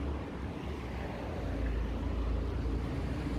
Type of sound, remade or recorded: recorded